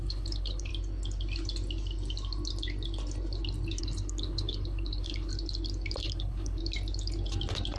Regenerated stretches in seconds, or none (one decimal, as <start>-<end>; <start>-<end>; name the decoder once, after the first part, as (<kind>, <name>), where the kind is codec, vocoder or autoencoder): 0.0-0.7 (codec, HILCodec); 3.8-5.3; 6.0-6.6